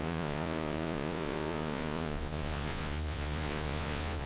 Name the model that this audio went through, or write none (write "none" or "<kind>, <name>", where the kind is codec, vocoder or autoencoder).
vocoder, Vocos